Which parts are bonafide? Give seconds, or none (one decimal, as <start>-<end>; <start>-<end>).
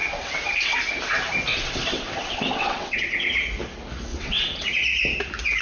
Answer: 0.8-1.5; 3.0-4.1; 4.7-5.6